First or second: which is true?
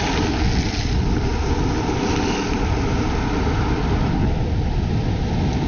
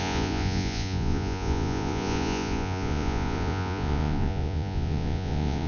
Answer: first